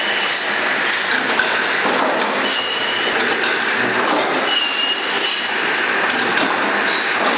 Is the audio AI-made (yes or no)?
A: no